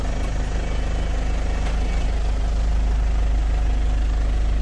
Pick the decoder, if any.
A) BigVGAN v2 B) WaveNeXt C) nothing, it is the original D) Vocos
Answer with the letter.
C